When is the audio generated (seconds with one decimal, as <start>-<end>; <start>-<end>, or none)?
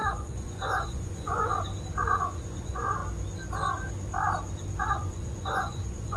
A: 0.0-1.5; 2.1-3.0; 4.9-6.2